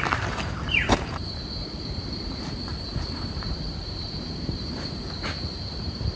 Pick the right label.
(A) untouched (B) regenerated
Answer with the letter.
B